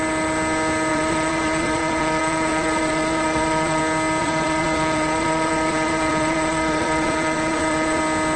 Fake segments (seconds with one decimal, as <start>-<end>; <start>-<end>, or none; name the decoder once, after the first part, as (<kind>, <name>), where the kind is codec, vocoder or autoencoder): 0.9-3.8 (vocoder, Vocos); 4.2-8.0